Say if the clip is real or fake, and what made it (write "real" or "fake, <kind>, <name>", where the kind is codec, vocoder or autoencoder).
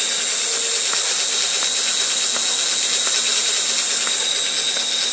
real